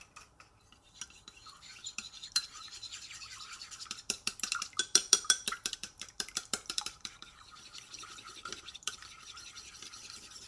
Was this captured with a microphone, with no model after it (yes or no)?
no